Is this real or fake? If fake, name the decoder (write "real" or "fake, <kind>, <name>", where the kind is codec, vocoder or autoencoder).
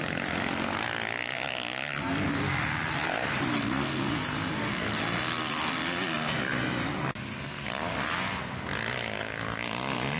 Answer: real